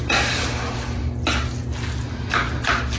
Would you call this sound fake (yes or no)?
no